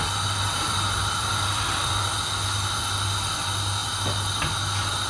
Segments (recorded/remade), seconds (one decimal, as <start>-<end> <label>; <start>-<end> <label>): 0.0-1.0 recorded; 1.0-2.1 remade; 2.1-5.1 recorded